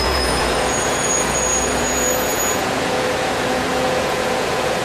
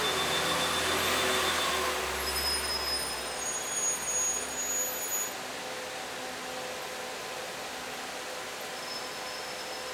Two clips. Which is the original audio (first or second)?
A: second